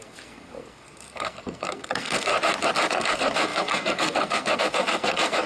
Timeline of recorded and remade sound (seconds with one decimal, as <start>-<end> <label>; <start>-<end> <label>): 0.0-2.3 remade; 2.3-2.9 recorded; 2.9-5.5 remade